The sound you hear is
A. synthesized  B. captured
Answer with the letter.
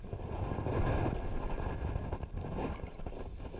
B